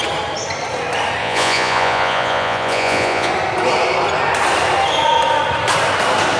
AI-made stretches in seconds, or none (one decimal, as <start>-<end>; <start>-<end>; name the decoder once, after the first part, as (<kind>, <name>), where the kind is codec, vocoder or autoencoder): 1.2-3.3 (vocoder, Vocos)